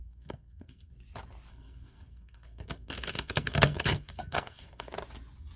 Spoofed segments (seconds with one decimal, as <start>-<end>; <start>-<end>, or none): 0.0-0.9; 1.5-4.9